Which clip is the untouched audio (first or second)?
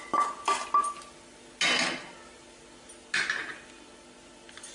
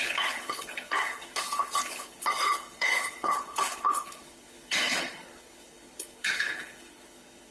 first